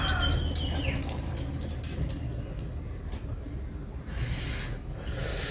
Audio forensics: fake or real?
real